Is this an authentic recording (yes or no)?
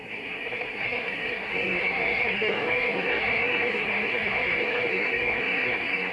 no